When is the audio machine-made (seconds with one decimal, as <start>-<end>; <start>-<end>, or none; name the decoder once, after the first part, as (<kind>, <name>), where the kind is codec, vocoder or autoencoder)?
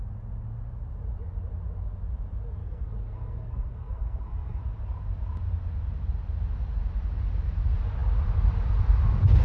2.6-4.6 (codec, SNAC)